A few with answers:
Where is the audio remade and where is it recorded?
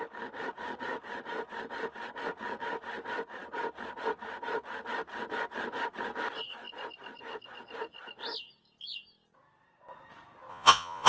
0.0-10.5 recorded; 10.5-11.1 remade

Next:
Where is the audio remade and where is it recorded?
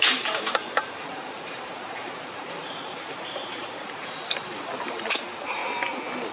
0.0-5.6 remade; 5.6-6.3 recorded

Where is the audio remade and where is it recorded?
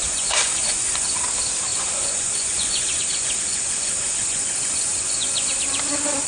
0.0-1.2 remade; 1.2-1.7 recorded; 1.7-5.5 remade; 5.5-6.3 recorded